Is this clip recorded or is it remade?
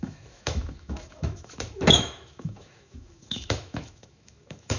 remade